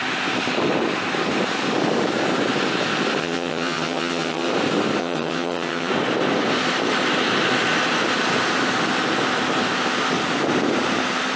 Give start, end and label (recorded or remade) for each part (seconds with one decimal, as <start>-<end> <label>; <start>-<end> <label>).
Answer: 0.0-3.2 recorded; 3.2-4.5 remade; 4.5-5.0 recorded; 5.0-5.9 remade; 5.9-11.4 recorded